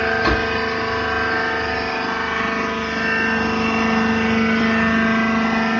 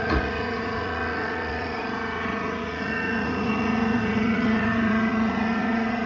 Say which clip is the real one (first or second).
first